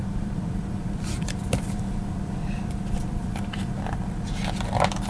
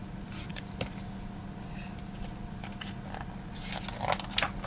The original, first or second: second